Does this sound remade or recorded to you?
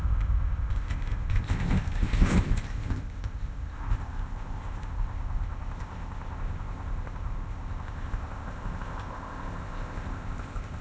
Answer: remade